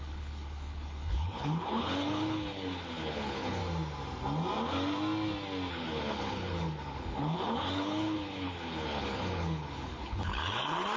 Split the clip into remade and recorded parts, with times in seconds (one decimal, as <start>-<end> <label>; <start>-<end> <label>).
0.0-3.6 remade; 3.6-5.7 recorded; 5.7-11.0 remade